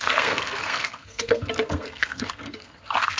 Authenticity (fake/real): fake